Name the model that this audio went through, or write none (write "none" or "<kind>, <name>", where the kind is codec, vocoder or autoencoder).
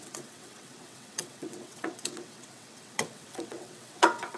vocoder, WaveNeXt